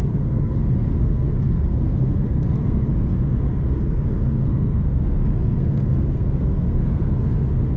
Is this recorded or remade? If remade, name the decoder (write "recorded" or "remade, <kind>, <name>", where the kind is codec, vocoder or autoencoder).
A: remade, codec, SNAC